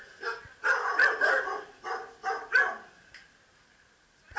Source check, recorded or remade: recorded